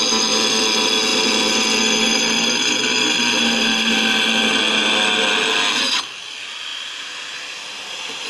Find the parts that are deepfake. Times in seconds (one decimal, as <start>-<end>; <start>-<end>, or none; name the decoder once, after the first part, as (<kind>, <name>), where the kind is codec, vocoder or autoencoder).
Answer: none